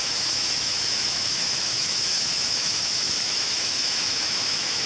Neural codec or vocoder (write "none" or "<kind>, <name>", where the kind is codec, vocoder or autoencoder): autoencoder, DAC-VAE